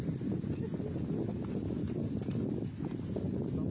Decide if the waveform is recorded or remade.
recorded